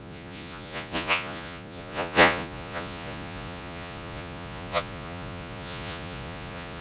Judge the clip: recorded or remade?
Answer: remade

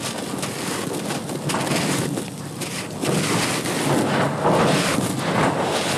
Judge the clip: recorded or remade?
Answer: recorded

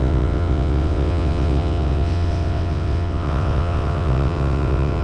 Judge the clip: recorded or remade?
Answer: remade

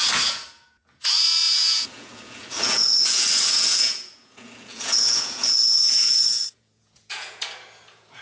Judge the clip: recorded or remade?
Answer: remade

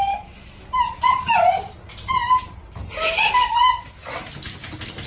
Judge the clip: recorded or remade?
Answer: recorded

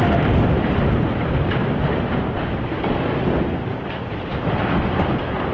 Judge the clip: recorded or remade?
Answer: recorded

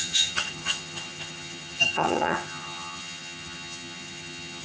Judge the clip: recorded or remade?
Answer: remade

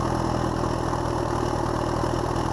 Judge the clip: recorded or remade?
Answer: recorded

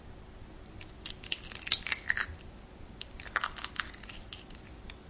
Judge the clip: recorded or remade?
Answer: recorded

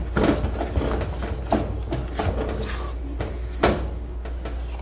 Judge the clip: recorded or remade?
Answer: recorded